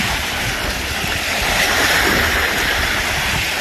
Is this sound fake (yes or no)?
yes